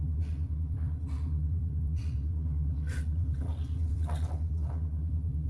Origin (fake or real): fake